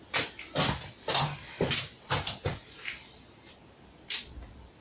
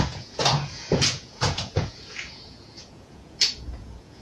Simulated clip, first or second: second